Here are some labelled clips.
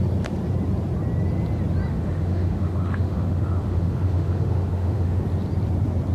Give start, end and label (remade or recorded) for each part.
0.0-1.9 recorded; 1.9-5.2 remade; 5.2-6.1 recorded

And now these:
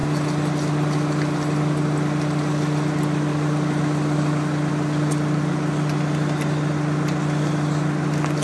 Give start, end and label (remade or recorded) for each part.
0.0-8.4 recorded

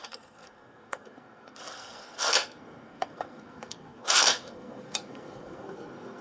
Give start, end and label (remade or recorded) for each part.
0.0-6.2 remade

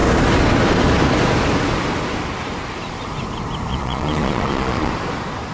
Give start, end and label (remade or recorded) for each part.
0.0-3.7 recorded; 3.7-4.9 remade; 4.9-5.5 recorded

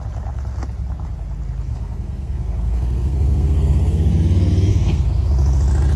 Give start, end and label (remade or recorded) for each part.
0.0-1.7 recorded; 1.7-4.1 remade; 4.1-4.7 recorded; 4.7-5.3 remade; 5.3-6.0 recorded